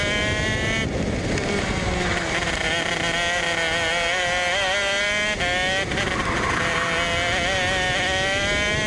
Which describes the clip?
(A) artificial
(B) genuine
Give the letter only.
B